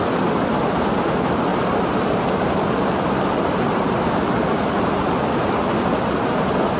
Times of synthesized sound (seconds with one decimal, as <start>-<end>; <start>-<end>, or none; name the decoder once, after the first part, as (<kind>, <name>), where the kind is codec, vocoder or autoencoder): 1.5-5.5 (vocoder, BigVGAN v2)

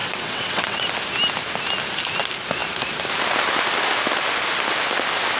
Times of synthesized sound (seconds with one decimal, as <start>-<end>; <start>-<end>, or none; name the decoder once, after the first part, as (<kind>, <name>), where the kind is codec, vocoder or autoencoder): 0.0-0.8 (vocoder, WaveNeXt)

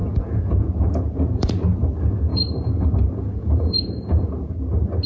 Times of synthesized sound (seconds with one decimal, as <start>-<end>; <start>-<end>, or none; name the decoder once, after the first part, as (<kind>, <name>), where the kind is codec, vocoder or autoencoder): 0.0-1.5 (vocoder, Vocos); 2.3-4.5

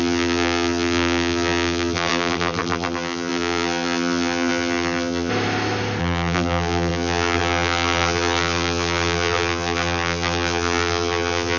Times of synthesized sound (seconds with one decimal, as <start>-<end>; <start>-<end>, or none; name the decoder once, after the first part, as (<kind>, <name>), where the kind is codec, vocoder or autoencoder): 0.0-5.3 (vocoder, BigVGAN v2); 6.0-11.6

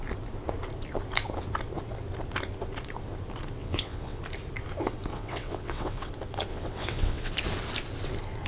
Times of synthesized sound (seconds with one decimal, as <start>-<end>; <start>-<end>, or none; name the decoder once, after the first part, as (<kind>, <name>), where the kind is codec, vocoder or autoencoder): 3.6-4.2 (vocoder, WaveNeXt); 5.1-6.1; 6.5-7.3

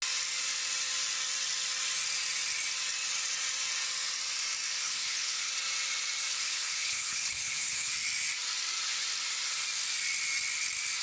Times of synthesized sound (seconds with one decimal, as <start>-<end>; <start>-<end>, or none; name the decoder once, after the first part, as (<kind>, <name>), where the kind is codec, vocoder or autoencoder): 4.8-5.5 (codec, HILCodec); 6.3-7.9

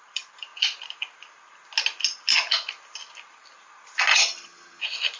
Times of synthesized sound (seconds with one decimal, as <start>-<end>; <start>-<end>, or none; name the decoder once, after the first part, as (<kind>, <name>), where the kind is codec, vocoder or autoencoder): 4.1-4.8 (vocoder, HiFi-GAN)

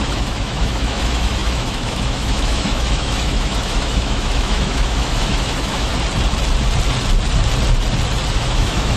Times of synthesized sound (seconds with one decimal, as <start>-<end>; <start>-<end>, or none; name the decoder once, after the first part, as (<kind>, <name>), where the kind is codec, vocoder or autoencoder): 0.0-5.9 (autoencoder, DAC-VAE); 8.3-9.0